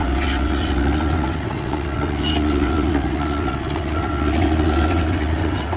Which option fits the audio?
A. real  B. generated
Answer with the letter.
B